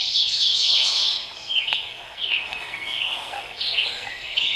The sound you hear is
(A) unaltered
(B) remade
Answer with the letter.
B